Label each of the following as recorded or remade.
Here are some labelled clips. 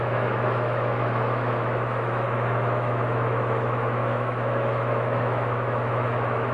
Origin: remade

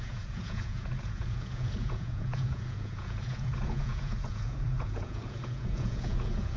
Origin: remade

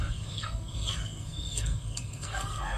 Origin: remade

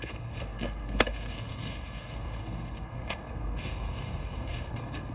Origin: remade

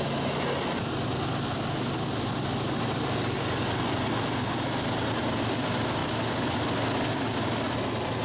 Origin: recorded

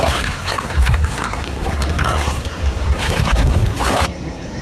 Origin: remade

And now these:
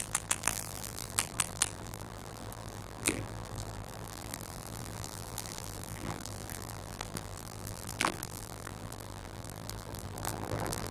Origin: remade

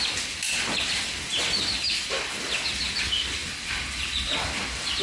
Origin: recorded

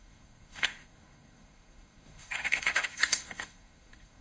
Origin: remade